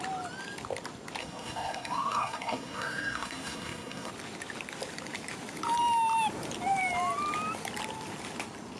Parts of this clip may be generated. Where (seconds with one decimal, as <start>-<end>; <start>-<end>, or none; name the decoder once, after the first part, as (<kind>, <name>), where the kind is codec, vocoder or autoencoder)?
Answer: 1.2-4.1 (codec, SNAC)